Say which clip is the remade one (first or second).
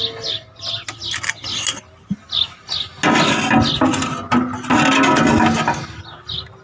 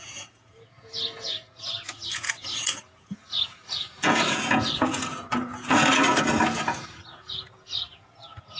second